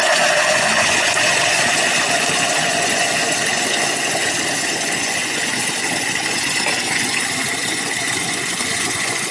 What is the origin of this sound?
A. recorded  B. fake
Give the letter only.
B